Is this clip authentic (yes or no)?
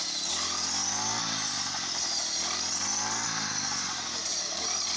yes